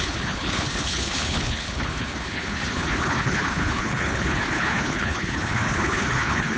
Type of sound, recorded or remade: remade